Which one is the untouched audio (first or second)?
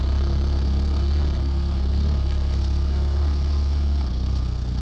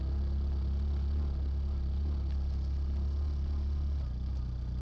second